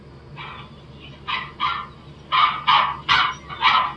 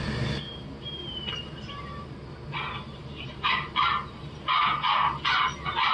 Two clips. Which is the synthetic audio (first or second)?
second